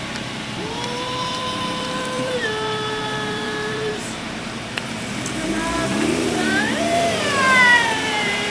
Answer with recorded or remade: remade